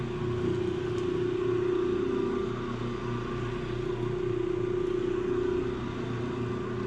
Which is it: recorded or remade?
recorded